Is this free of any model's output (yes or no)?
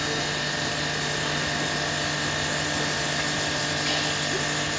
yes